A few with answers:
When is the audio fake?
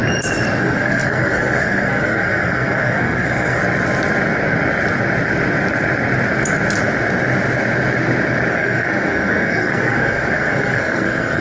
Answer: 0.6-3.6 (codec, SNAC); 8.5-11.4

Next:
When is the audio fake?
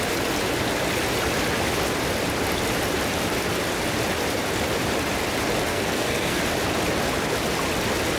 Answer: 5.7-6.4 (codec, SNAC)